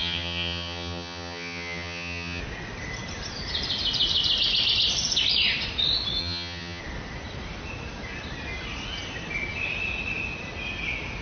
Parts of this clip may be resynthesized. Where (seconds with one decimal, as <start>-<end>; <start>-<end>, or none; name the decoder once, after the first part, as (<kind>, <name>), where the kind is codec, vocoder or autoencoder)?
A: 0.0-2.4 (vocoder, HiFi-GAN); 6.2-6.8